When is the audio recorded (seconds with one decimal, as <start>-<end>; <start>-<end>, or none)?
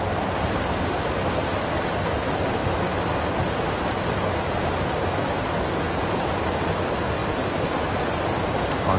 0.0-2.6; 6.4-7.2; 7.9-9.0